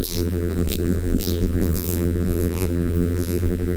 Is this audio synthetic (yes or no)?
yes